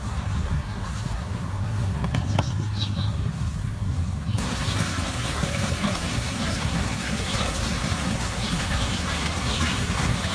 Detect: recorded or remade remade